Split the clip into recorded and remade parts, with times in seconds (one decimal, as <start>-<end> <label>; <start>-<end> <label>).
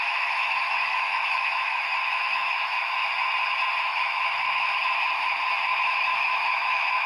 0.0-3.0 remade; 3.0-3.8 recorded; 3.8-4.7 remade; 4.7-5.6 recorded; 5.6-7.1 remade